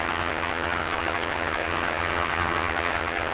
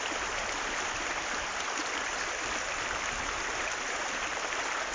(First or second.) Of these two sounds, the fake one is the first